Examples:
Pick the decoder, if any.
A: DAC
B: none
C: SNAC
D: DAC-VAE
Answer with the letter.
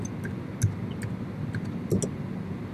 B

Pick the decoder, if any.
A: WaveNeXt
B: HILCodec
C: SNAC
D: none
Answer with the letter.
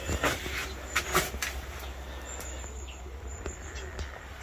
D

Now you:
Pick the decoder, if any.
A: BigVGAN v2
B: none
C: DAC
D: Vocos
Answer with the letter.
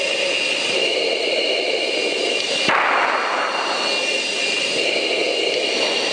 B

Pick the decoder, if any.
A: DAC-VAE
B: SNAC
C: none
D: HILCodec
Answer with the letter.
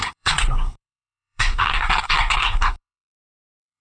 B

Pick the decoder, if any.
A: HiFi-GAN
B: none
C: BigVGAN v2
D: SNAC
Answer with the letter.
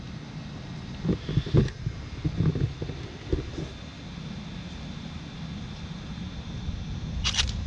B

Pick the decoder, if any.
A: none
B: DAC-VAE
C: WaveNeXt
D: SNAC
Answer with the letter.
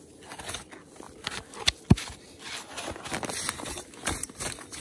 A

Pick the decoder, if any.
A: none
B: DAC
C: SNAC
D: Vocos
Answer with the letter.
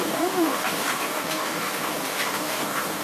B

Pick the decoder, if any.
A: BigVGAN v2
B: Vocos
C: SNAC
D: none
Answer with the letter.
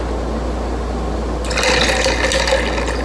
D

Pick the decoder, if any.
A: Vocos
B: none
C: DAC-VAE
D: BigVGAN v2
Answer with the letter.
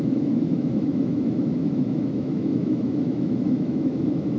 C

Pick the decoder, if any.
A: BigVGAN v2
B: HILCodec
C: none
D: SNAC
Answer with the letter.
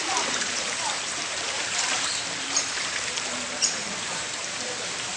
A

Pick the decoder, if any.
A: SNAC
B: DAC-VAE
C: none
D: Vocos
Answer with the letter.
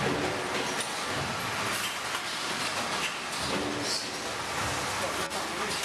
C